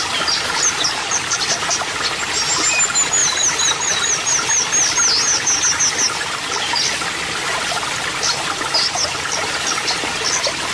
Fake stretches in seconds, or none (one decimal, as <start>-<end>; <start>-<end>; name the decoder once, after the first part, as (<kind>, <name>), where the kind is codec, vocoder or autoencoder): none